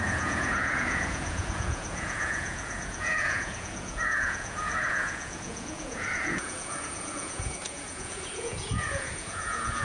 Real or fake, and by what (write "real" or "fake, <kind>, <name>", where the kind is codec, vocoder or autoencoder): fake, vocoder, Vocos